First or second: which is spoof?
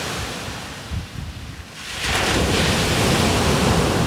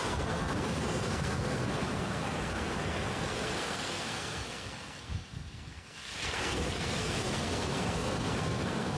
second